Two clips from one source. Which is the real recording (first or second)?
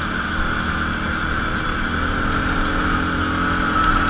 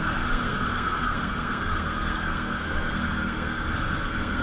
first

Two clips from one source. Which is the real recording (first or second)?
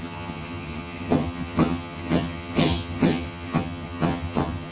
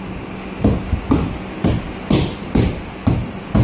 second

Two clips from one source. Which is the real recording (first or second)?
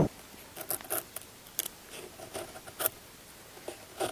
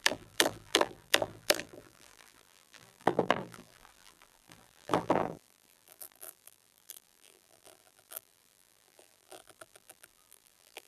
first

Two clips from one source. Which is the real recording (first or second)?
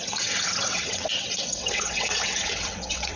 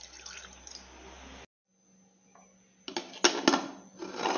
second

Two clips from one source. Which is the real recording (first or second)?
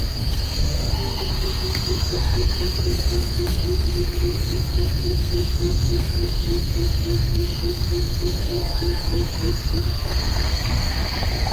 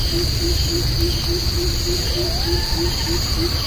second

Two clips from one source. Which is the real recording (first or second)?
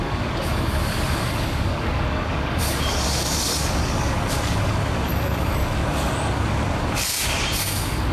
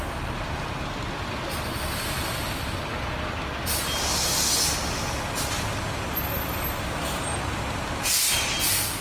second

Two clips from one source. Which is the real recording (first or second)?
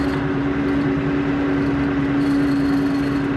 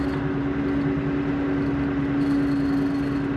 second